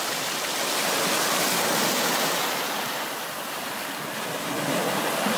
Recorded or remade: recorded